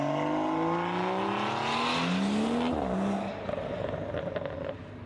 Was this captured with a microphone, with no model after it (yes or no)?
yes